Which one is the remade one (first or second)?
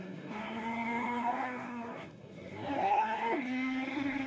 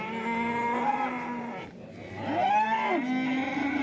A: first